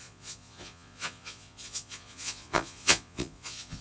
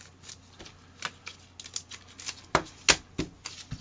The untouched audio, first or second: second